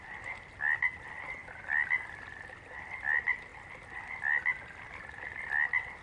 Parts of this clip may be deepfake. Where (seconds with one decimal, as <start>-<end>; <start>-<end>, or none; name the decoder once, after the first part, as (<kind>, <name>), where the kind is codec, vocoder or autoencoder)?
none